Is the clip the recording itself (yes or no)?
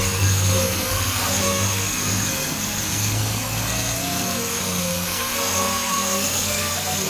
no